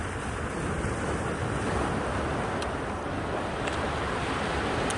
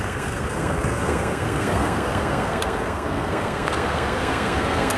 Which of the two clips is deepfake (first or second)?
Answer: second